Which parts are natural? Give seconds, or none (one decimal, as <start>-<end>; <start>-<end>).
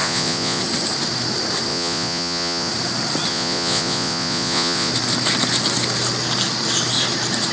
0.6-1.7; 2.7-3.3; 4.9-7.5